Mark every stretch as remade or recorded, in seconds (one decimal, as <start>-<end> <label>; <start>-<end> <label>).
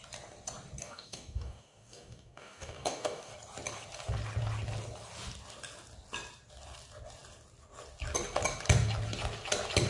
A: 0.0-0.8 recorded; 0.8-3.3 remade; 3.3-9.9 recorded